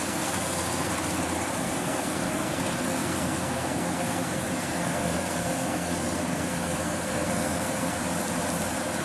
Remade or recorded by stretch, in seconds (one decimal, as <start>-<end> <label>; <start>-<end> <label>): 0.0-8.0 remade; 8.0-9.0 recorded

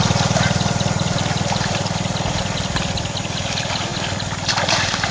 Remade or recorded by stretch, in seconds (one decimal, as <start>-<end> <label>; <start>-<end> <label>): 0.0-5.1 recorded

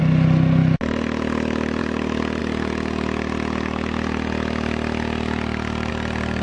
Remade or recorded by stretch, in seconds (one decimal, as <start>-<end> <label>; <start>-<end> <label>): 0.0-6.4 recorded